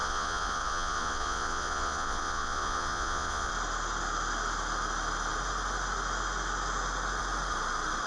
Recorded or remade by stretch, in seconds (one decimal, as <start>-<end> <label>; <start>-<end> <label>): 0.0-3.5 remade; 3.5-8.1 recorded